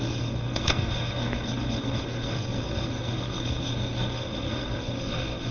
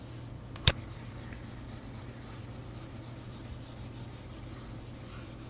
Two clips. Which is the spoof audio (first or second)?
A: first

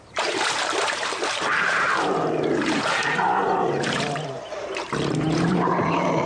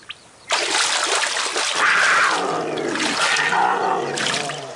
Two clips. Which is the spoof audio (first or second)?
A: first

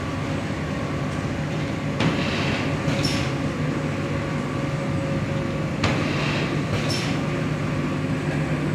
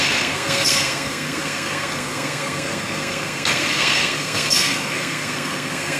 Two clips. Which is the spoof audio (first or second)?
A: second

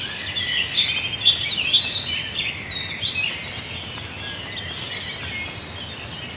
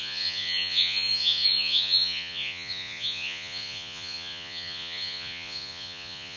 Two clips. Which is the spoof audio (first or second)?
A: second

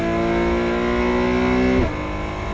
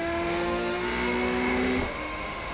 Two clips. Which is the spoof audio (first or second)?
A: second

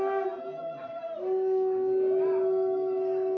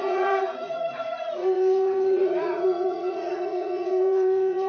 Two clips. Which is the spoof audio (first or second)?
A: second